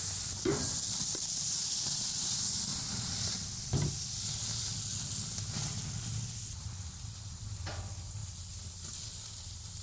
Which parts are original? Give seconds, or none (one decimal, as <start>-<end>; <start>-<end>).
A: 0.0-9.8